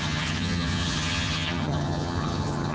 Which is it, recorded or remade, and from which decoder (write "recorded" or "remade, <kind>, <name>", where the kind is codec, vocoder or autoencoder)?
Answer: remade, vocoder, HiFi-GAN